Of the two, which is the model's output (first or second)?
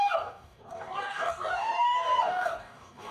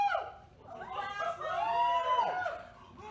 first